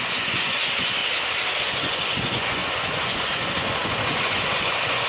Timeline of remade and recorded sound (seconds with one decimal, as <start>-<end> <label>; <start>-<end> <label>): 0.0-1.0 remade; 1.0-1.6 recorded; 1.6-5.1 remade